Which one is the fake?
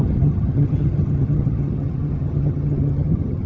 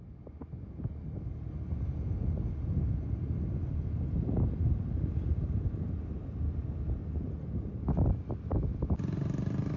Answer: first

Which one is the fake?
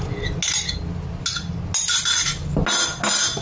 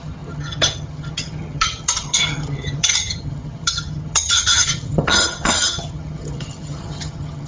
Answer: second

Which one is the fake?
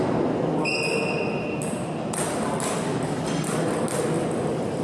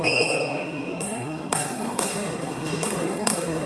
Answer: second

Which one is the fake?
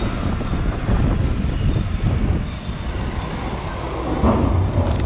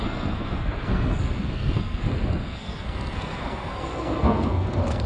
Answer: second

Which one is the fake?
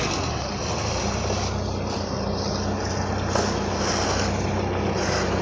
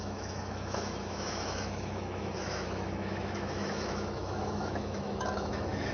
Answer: second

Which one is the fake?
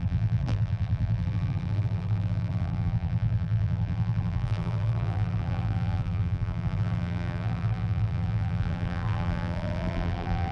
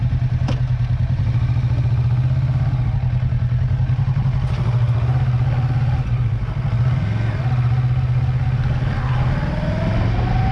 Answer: first